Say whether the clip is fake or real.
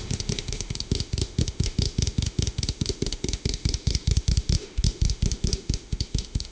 fake